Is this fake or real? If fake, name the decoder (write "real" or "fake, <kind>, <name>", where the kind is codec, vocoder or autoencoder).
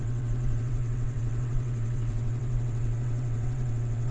fake, vocoder, WaveNeXt